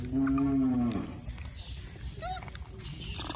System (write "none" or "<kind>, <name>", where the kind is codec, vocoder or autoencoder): none